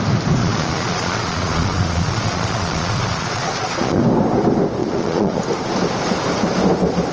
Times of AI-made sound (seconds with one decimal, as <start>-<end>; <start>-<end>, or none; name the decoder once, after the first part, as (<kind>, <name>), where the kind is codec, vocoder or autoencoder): 0.4-4.0 (vocoder, Vocos); 4.8-5.4

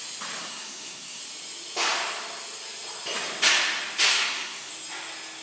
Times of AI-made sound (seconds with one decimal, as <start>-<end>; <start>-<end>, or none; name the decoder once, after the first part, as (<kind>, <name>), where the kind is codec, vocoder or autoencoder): 0.4-1.2 (codec, SNAC); 4.1-4.7